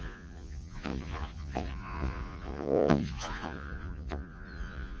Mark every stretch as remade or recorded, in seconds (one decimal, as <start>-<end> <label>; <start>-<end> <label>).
0.0-5.0 remade